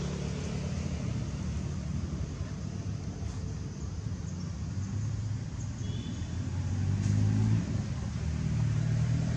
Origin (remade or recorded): recorded